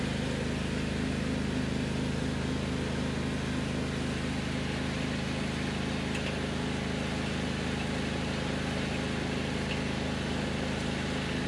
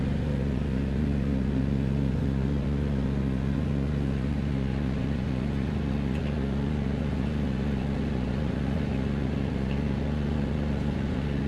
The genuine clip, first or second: first